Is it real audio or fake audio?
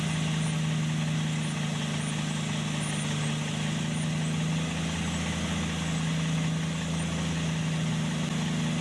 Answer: real